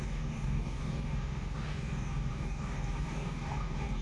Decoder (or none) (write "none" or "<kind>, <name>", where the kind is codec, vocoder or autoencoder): codec, DAC